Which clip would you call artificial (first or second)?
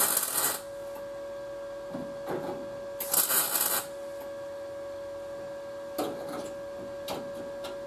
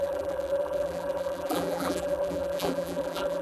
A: second